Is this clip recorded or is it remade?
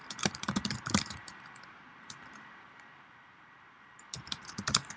remade